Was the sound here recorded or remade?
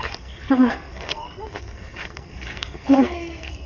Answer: remade